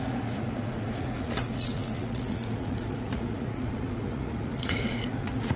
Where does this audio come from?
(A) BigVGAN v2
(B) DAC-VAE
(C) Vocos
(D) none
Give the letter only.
C